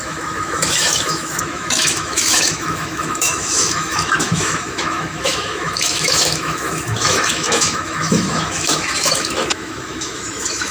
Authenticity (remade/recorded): remade